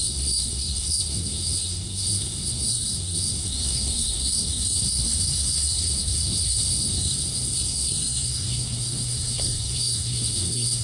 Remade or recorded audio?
remade